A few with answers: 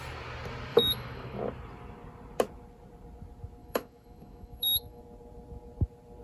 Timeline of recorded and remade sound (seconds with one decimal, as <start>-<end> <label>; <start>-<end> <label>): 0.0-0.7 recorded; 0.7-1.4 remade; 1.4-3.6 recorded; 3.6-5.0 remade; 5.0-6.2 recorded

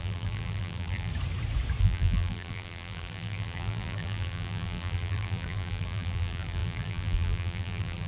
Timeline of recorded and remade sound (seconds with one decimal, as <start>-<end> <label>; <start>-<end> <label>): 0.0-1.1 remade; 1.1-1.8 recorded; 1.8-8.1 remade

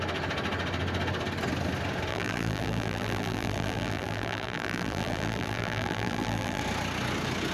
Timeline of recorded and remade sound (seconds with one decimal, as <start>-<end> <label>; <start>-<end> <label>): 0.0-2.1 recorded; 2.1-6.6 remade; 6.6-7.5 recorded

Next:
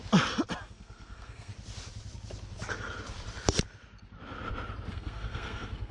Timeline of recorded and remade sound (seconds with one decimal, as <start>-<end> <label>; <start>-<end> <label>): 0.0-0.6 recorded; 0.6-1.5 remade; 1.5-4.9 recorded; 4.9-5.9 remade